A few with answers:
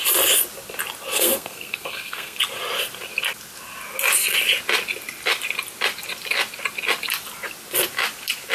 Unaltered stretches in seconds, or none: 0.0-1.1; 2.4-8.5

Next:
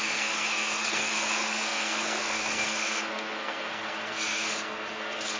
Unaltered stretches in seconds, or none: none